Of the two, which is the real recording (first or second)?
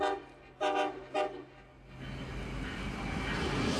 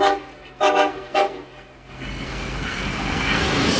first